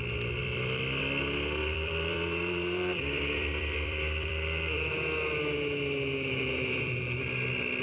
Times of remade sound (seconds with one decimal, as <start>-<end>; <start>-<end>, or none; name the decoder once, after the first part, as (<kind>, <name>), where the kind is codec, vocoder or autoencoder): 0.4-1.0 (vocoder, BigVGAN v2); 1.6-4.9; 6.5-7.0